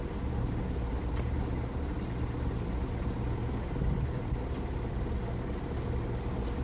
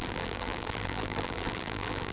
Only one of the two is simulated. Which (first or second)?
second